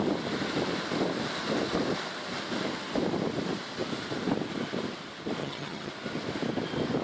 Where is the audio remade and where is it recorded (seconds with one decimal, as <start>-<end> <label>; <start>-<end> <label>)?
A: 0.0-5.4 recorded; 5.4-5.9 remade; 5.9-7.0 recorded